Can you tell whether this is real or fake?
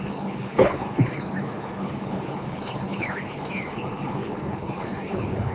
fake